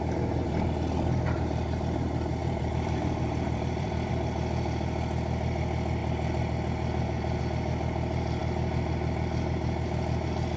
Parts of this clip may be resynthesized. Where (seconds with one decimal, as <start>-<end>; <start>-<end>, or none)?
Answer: 2.4-4.1